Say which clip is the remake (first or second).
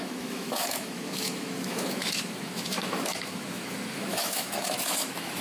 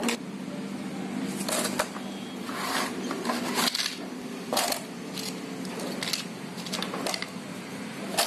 first